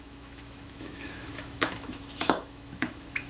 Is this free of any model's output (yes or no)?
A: no